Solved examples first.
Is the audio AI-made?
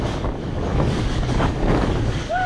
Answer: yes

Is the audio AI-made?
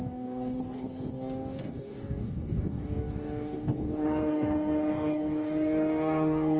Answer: yes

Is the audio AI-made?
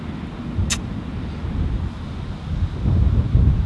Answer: no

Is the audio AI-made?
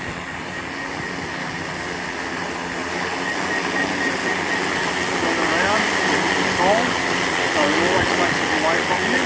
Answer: no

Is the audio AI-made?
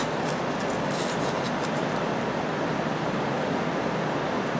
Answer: no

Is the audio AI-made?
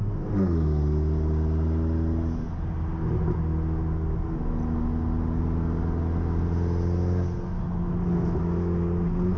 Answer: no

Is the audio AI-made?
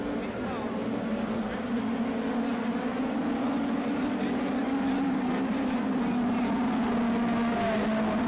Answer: no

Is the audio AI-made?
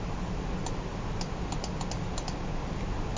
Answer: no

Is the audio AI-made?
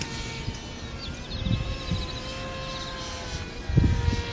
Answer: no